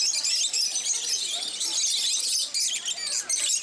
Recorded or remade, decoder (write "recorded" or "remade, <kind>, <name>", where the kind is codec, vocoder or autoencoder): recorded